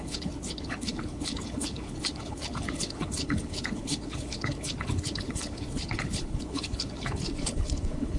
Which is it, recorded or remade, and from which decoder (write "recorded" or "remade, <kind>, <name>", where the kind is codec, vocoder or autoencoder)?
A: remade, codec, HILCodec